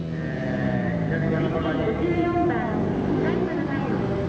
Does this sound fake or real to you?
real